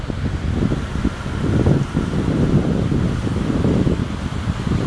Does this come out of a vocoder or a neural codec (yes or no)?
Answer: no